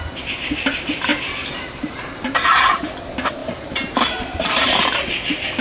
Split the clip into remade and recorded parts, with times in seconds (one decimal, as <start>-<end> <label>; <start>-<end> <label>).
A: 0.0-1.1 recorded; 1.1-2.9 remade; 2.9-3.4 recorded; 3.4-4.8 remade; 4.8-5.6 recorded